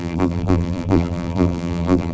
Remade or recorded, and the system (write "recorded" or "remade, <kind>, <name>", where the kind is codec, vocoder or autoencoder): remade, vocoder, BigVGAN v2